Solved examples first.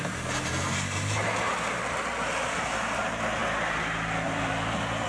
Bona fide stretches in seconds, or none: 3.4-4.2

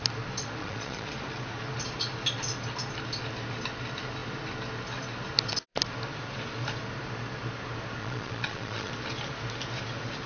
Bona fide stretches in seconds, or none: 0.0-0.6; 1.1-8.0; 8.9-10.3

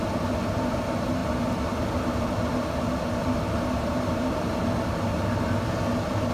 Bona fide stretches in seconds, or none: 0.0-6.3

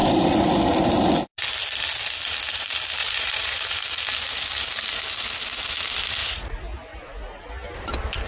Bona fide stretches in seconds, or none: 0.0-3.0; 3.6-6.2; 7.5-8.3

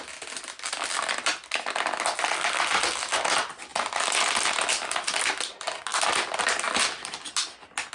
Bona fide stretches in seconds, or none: 0.0-7.9

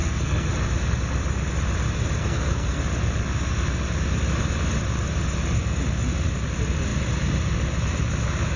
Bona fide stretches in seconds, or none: 0.5-2.2; 2.8-8.6

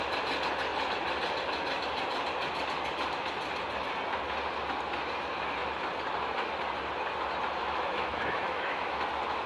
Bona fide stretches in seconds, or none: 0.0-7.6; 9.0-9.5